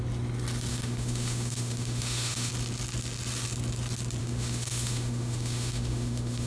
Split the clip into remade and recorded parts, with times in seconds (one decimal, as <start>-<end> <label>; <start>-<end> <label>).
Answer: 0.0-0.7 recorded; 0.7-2.5 remade; 2.5-4.2 recorded; 4.2-6.5 remade

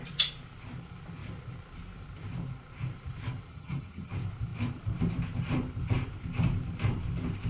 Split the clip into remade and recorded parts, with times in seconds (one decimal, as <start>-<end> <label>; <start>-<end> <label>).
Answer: 0.0-3.5 recorded; 3.5-4.1 remade; 4.1-7.5 recorded

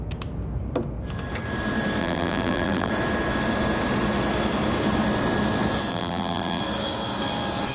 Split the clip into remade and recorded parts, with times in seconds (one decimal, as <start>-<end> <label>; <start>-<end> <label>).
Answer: 0.0-2.0 recorded; 2.0-2.9 remade; 2.9-5.9 recorded; 5.9-6.6 remade; 6.6-7.7 recorded

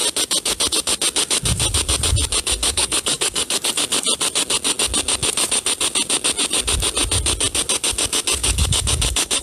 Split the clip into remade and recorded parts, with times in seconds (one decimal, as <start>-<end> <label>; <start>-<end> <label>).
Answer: 0.0-2.6 recorded; 2.6-3.7 remade; 3.7-8.4 recorded; 8.4-9.4 remade

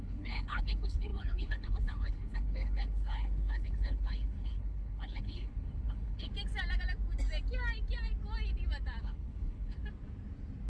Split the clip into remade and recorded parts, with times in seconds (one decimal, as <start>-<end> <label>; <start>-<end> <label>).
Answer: 0.0-6.3 remade; 6.3-9.0 recorded; 9.0-9.8 remade; 9.8-10.7 recorded

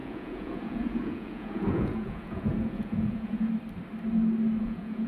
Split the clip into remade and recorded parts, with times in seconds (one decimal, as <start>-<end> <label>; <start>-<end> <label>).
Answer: 0.0-3.5 remade; 3.5-4.6 recorded; 4.6-5.1 remade

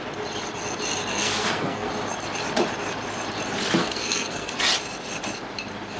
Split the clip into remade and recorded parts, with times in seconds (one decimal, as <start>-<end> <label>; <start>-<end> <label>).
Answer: 0.0-1.1 recorded; 1.1-1.9 remade; 1.9-3.8 recorded; 3.8-4.6 remade; 4.6-6.0 recorded